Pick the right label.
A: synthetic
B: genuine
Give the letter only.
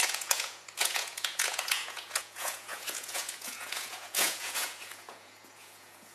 A